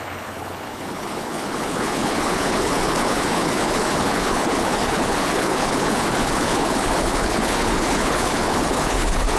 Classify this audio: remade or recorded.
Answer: remade